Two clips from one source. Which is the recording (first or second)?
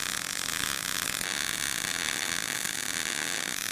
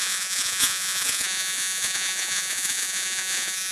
first